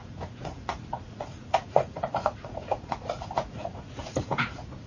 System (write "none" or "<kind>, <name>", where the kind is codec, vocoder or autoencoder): vocoder, Vocos